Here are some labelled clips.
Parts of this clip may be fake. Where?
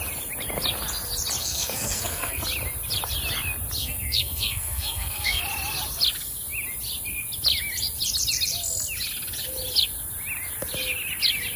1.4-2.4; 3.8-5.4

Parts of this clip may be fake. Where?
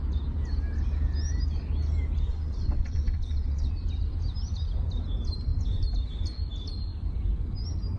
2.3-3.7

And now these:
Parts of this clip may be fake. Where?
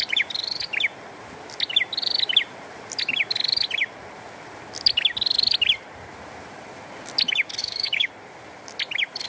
7.6-8.1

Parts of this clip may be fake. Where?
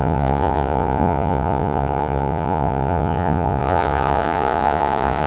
0.0-5.3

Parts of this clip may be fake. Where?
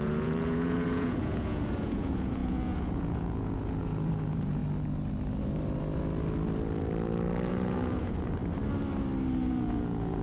0.0-4.6; 7.5-8.4; 9.5-10.2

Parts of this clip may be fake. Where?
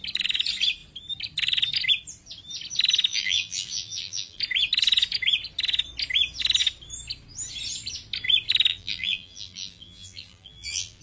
3.1-4.4; 8.7-11.0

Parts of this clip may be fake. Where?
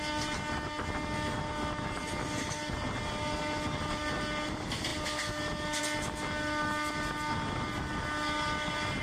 none